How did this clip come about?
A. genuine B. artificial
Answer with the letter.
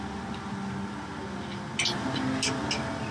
A